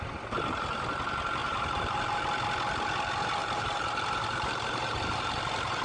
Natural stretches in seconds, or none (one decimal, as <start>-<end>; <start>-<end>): 0.0-1.4; 2.2-3.4

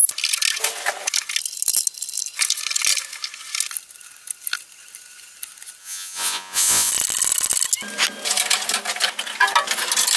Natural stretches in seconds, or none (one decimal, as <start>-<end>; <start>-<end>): 0.0-5.8; 6.9-10.2

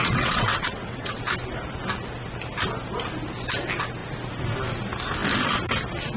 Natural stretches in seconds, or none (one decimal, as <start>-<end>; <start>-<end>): 1.2-6.2

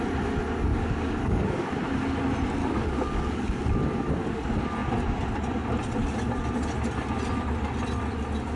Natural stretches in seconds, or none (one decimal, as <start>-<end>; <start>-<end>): 0.0-0.7; 1.7-2.6; 3.6-8.6

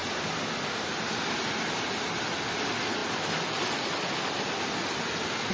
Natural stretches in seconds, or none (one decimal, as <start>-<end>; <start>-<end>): 0.0-5.5

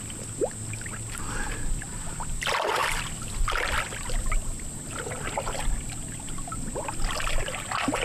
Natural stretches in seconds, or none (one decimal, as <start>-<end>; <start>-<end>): 0.0-8.0